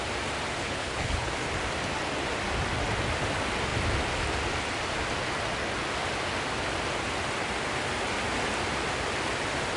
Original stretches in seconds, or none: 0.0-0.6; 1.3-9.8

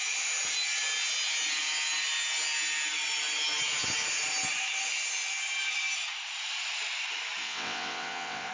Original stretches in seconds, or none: 0.0-7.4

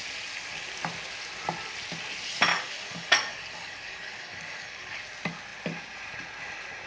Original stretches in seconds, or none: 0.0-2.5; 5.0-6.9

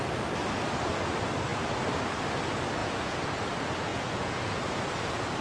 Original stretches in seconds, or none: 0.0-2.8; 3.4-3.9; 4.6-5.4

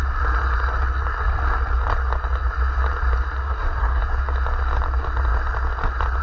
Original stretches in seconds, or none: 0.0-3.4; 4.0-6.2